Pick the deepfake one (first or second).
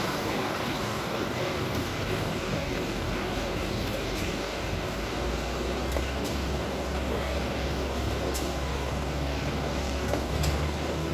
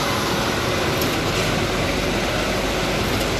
first